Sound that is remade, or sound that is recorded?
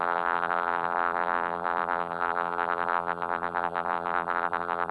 remade